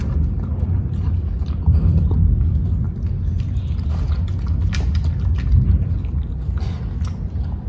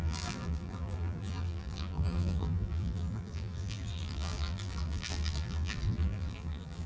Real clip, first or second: first